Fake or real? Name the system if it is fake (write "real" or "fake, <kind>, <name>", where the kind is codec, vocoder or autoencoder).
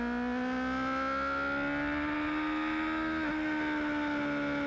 real